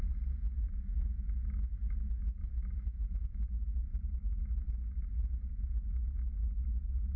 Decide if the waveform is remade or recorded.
recorded